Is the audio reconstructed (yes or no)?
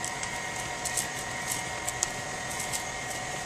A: no